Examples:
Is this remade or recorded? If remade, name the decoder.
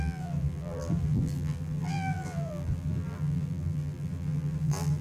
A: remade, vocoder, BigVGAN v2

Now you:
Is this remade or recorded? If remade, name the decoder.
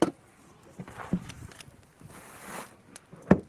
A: recorded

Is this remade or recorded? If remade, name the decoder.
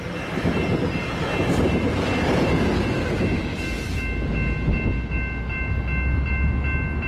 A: recorded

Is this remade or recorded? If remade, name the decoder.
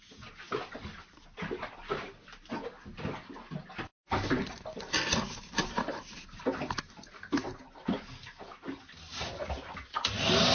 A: recorded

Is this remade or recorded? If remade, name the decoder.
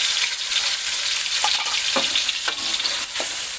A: recorded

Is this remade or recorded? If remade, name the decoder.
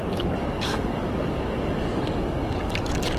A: remade, codec, DAC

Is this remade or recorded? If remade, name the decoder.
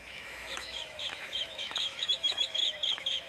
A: remade, autoencoder, DAC-VAE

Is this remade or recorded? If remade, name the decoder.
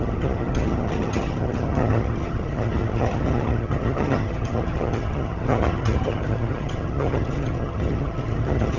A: remade, vocoder, HiFi-GAN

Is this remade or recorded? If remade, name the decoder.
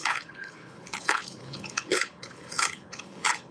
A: remade, codec, HILCodec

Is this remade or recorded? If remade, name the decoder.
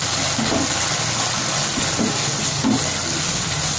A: recorded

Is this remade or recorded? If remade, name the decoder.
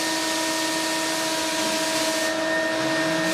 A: recorded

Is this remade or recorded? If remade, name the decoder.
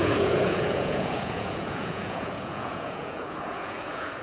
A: remade, vocoder, Vocos